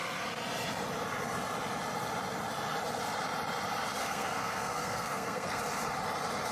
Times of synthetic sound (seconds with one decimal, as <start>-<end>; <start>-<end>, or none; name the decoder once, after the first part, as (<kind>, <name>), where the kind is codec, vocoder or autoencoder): 4.0-5.6 (codec, SNAC)